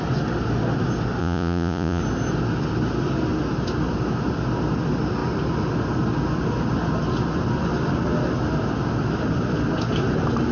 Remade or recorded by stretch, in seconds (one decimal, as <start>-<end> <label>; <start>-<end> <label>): 0.0-1.2 recorded; 1.2-2.0 remade; 2.0-10.5 recorded